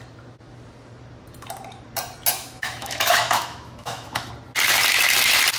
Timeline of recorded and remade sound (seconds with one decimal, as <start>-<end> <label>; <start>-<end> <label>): 0.0-2.3 recorded; 2.3-4.3 remade; 4.3-5.6 recorded